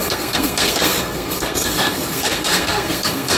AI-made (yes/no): yes